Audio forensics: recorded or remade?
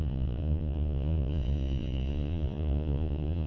remade